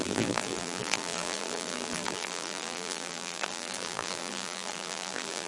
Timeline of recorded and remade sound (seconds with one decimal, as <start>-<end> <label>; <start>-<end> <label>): 0.0-5.5 remade

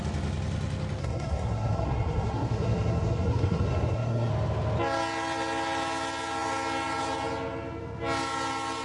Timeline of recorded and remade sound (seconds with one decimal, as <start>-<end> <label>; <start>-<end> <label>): 0.0-1.0 recorded; 1.0-4.3 remade; 4.3-8.8 recorded

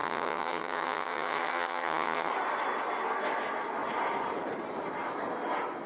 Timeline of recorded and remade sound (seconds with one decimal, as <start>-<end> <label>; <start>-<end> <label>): 0.0-2.3 remade; 2.3-5.9 recorded